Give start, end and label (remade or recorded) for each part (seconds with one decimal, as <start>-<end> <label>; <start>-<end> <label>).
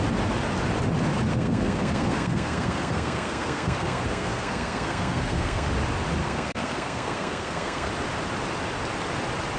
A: 0.0-1.3 recorded; 1.3-5.7 remade; 5.7-6.2 recorded; 6.2-7.9 remade; 7.9-9.6 recorded